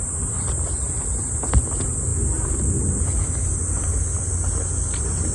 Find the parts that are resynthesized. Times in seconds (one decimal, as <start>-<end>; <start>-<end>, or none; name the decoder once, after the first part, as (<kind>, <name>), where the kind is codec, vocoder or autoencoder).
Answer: none